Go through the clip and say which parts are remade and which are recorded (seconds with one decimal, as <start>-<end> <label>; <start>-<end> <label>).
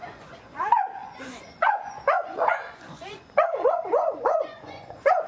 0.0-5.3 remade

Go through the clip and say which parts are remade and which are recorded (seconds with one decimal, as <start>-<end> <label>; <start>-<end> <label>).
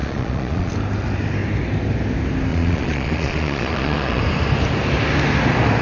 0.0-0.7 remade; 0.7-2.5 recorded; 2.5-4.2 remade; 4.2-5.8 recorded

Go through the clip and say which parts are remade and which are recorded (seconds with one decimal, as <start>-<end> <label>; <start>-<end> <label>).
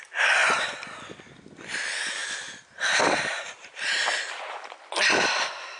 0.0-5.8 recorded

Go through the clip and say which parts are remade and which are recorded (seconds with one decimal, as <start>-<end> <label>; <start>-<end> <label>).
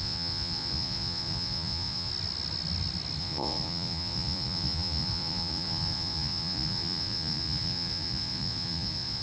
0.0-2.1 remade; 2.1-3.2 recorded; 3.2-9.2 remade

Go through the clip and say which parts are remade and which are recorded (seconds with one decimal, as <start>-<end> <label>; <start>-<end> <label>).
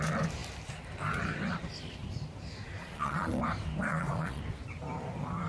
0.0-2.8 recorded; 2.8-3.4 remade; 3.4-3.9 recorded; 3.9-4.4 remade; 4.4-5.5 recorded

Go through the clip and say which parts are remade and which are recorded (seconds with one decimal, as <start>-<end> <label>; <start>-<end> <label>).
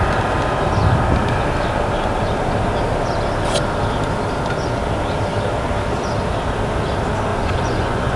0.0-7.3 recorded; 7.3-8.2 remade